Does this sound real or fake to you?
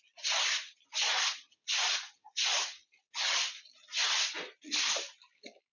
real